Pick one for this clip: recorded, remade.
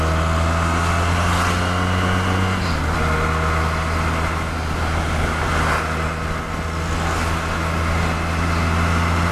recorded